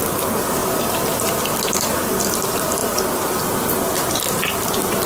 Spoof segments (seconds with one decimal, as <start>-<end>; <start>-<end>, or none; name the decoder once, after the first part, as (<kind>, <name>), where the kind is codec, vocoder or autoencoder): none